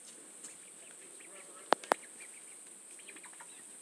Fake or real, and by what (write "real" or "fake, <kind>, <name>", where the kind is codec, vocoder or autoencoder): real